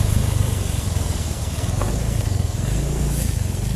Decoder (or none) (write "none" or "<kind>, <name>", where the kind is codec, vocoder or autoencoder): codec, SNAC